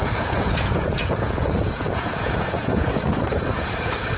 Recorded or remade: remade